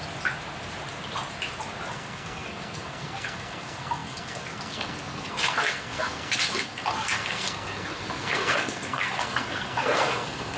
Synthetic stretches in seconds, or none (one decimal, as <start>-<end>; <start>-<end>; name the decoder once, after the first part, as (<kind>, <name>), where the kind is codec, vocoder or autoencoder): 1.9-10.6 (codec, SNAC)